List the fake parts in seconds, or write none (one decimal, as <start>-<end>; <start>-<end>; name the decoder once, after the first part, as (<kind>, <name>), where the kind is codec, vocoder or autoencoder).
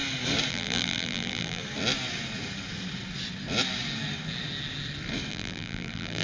0.5-1.6 (vocoder, BigVGAN v2); 5.3-6.2